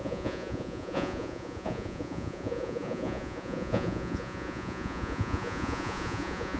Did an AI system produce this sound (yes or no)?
yes